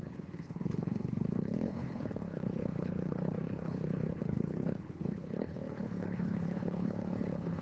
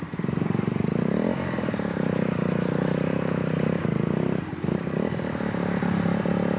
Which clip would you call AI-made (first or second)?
first